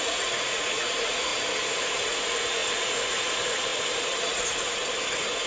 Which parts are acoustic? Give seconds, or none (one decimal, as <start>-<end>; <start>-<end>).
1.3-1.9; 3.7-4.3; 4.8-5.5